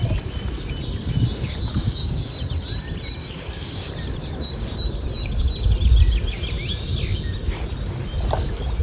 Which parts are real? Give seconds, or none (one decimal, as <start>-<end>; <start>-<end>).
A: 0.0-1.7; 2.3-3.2; 3.9-8.8